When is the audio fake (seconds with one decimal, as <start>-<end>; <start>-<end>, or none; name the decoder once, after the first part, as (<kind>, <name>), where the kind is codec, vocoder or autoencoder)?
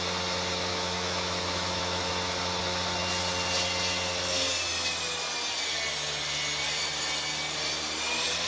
0.7-2.1 (autoencoder, DAC-VAE)